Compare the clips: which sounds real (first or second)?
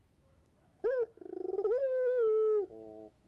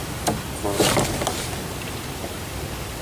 second